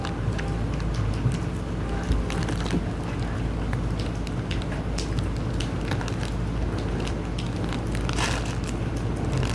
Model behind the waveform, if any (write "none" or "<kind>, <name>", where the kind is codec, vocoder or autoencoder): none